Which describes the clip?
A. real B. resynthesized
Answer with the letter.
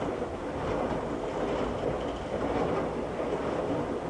A